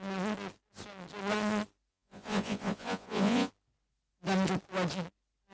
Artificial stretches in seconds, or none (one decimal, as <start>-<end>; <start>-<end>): 1.9-3.5